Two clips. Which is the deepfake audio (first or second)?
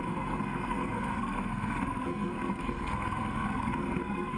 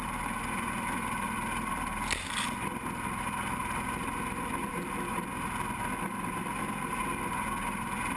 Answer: first